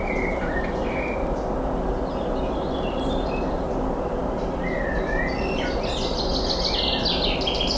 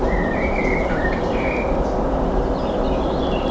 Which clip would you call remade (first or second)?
second